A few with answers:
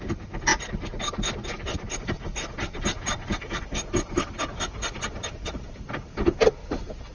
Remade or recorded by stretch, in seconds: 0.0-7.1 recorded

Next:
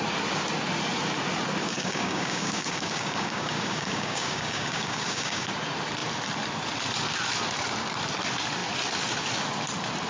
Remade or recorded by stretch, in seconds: 0.0-1.6 recorded; 1.6-5.5 remade; 5.5-10.1 recorded

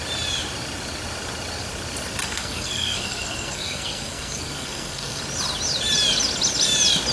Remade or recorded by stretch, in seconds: 0.0-2.2 recorded; 2.2-5.2 remade; 5.2-7.1 recorded

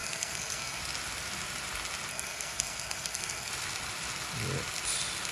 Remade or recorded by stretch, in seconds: 0.0-0.8 remade; 0.8-2.1 recorded; 2.1-3.5 remade; 3.5-5.3 recorded

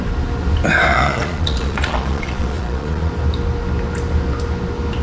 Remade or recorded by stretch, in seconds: 0.0-0.9 recorded; 0.9-3.1 remade; 3.1-5.0 recorded

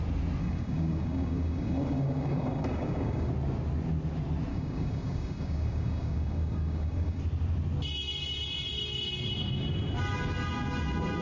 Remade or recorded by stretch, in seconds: 0.0-0.4 recorded; 0.4-3.3 remade; 3.3-4.5 recorded; 4.5-7.2 remade; 7.2-11.2 recorded

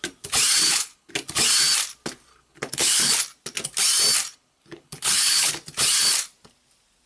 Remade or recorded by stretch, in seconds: 0.0-0.6 recorded; 0.6-1.1 remade; 1.1-2.3 recorded; 2.3-3.1 remade; 3.1-4.3 recorded; 4.3-5.5 remade; 5.5-7.1 recorded

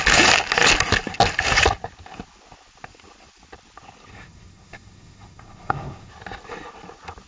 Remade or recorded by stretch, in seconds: 0.0-4.1 recorded; 4.1-6.1 remade; 6.1-7.3 recorded